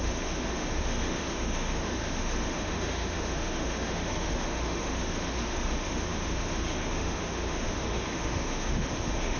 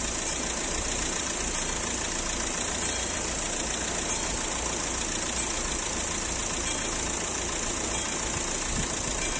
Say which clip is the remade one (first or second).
first